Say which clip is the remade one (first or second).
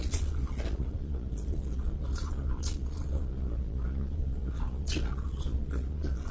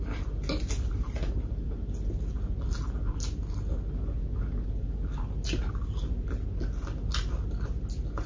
first